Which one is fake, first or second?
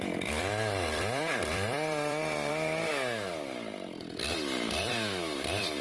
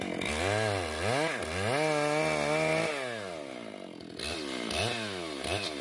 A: first